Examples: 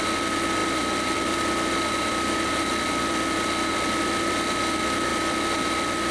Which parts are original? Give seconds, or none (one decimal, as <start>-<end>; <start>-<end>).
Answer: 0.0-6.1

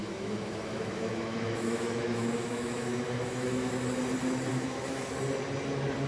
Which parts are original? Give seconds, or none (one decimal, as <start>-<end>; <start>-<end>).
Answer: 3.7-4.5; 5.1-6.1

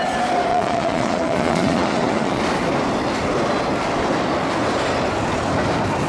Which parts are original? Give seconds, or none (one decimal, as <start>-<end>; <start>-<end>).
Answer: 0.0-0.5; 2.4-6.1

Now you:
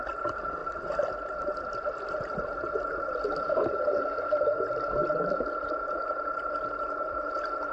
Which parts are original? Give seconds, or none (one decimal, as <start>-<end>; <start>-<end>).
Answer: 0.0-7.7